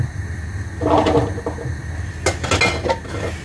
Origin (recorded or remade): recorded